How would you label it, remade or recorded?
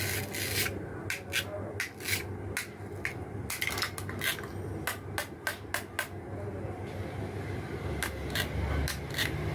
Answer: recorded